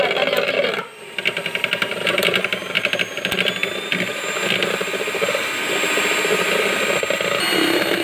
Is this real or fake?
real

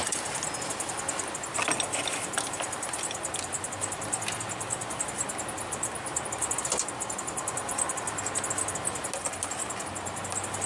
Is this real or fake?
real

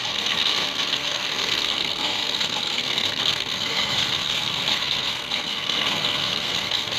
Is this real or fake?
fake